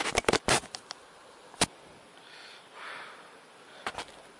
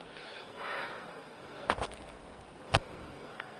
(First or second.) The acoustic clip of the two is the first